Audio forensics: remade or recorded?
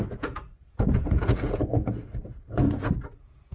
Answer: remade